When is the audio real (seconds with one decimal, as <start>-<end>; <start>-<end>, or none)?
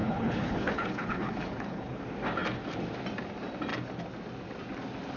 2.0-5.2